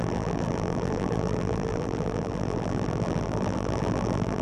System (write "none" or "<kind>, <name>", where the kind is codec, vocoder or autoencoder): vocoder, BigVGAN v2